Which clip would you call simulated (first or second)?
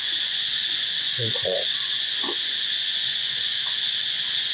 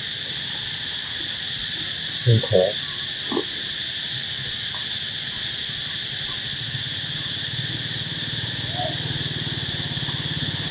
first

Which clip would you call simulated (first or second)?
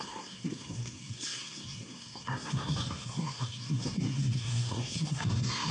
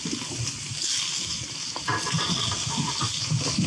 first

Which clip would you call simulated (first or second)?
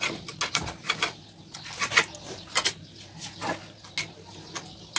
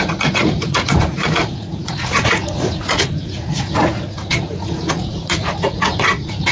second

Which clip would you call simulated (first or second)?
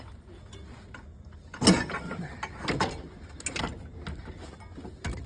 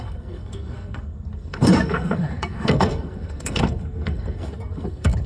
second